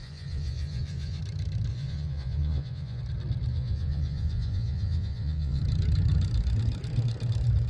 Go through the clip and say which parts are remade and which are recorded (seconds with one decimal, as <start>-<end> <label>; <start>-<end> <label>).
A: 0.0-1.2 remade; 1.2-1.7 recorded; 1.7-3.0 remade; 3.0-3.5 recorded; 3.5-5.6 remade; 5.6-7.7 recorded